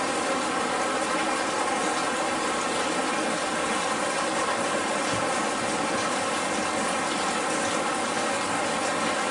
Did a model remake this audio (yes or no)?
no